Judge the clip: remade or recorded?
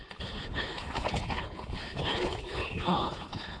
remade